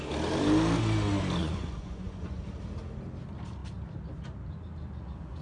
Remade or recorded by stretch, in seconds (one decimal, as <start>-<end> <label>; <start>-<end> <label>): 0.0-1.4 recorded; 1.4-2.4 remade; 2.4-5.4 recorded